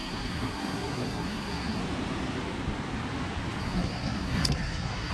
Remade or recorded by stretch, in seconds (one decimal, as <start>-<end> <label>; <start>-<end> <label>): 0.0-1.8 remade; 1.8-3.6 recorded; 3.6-5.1 remade